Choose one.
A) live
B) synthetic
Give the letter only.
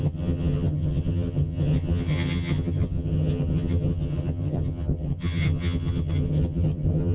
B